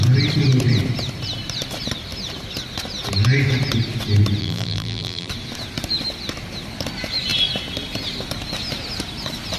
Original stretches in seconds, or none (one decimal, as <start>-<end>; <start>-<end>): 0.0-4.4; 5.3-9.6